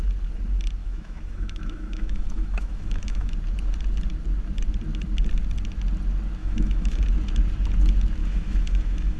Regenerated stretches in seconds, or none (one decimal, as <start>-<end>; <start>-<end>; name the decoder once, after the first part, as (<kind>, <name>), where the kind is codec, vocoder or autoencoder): 0.8-3.3 (autoencoder, DAC-VAE); 6.4-7.0; 8.2-9.2